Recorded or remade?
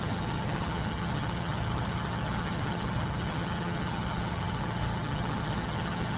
remade